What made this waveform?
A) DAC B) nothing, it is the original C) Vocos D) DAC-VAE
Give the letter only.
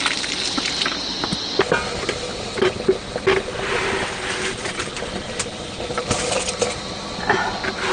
B